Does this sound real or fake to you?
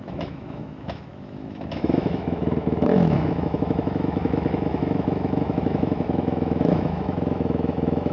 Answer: fake